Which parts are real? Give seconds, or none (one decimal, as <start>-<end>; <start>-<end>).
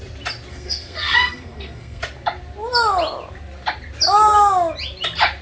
0.0-0.5; 2.0-5.4